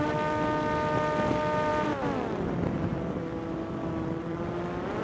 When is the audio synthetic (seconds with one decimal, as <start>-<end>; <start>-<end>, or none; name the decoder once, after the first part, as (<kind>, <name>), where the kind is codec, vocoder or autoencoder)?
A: 1.7-5.0 (vocoder, BigVGAN v2)